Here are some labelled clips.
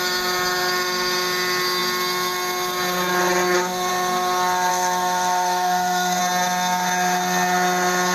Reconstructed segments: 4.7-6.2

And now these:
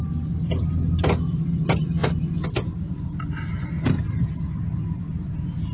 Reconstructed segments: none

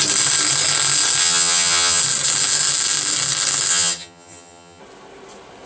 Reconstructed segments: 1.2-2.0; 3.7-4.8

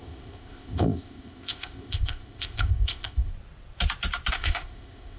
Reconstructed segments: 0.0-3.3; 4.3-5.2

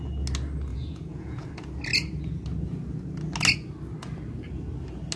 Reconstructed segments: 0.7-1.5

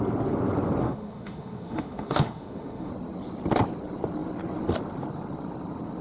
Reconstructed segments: 0.8-2.9

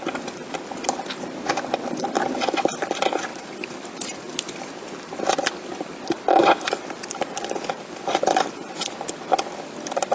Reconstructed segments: none